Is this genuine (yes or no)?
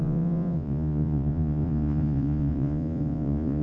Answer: no